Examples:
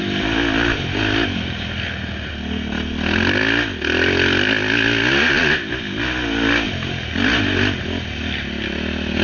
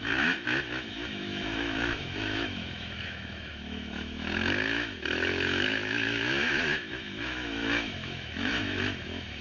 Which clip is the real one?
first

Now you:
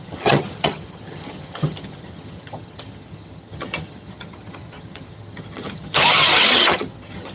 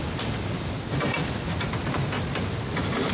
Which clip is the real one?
second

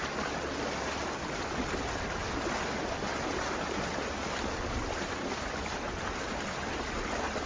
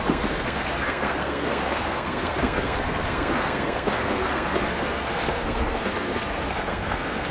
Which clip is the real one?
first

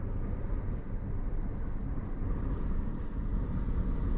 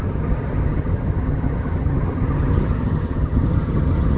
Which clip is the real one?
first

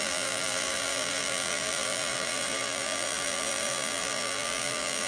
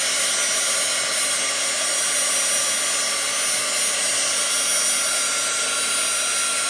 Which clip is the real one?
second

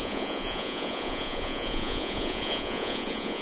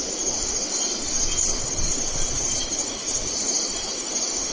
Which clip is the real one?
second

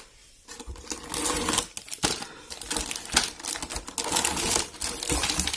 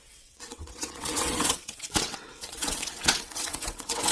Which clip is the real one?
first